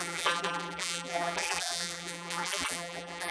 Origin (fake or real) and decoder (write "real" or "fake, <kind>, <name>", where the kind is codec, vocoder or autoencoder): fake, vocoder, BigVGAN v2